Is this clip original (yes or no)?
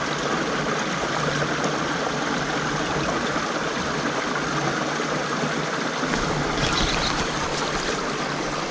yes